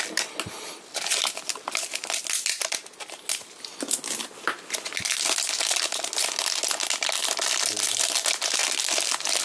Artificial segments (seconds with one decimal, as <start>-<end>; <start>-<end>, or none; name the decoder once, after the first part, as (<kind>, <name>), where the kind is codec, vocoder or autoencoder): none

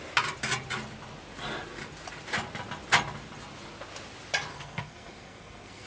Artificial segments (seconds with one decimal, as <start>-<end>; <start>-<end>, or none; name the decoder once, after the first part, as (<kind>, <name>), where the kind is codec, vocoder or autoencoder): 4.5-5.9 (codec, SNAC)

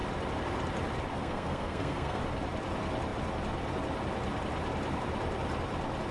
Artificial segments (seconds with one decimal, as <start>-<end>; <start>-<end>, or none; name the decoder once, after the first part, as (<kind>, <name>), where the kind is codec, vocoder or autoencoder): 1.1-2.2 (codec, SNAC)

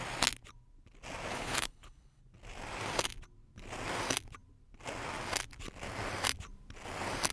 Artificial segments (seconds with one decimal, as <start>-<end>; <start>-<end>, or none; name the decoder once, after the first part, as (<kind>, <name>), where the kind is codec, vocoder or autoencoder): 1.3-2.2 (codec, HILCodec)